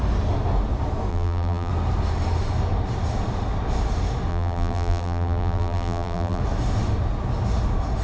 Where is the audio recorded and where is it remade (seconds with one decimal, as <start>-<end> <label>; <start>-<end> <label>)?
0.0-1.1 recorded; 1.1-1.7 remade; 1.7-4.3 recorded; 4.3-6.4 remade; 6.4-8.0 recorded